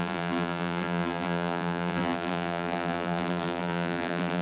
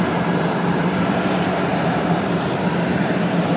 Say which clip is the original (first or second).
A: second